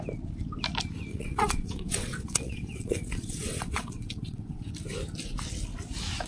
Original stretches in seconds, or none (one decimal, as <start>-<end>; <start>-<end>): 0.0-1.1; 4.7-6.3